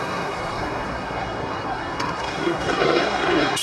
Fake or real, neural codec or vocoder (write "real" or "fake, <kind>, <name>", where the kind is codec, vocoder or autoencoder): fake, codec, SNAC